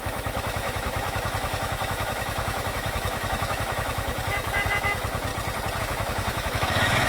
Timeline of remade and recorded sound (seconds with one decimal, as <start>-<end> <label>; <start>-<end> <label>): 0.0-5.3 remade; 5.3-5.8 recorded; 5.8-7.1 remade